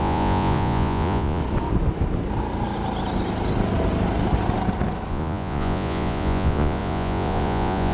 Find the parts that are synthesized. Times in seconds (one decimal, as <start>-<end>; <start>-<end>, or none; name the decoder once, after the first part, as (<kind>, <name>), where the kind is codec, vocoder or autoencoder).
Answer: 0.0-1.4 (vocoder, Vocos); 5.1-7.9